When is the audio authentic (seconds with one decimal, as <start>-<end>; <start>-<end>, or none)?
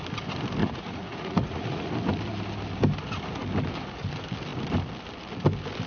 0.0-0.6; 1.9-5.9